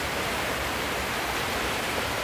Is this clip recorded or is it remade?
remade